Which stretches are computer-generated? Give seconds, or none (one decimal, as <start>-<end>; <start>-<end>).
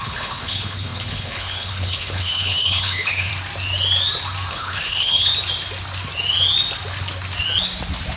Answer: 0.0-3.3; 4.5-5.3